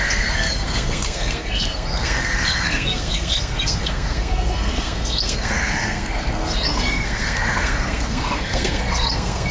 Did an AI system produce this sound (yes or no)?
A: yes